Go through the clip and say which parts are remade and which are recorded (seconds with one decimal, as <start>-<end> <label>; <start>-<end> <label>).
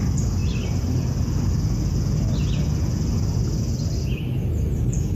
0.0-5.1 recorded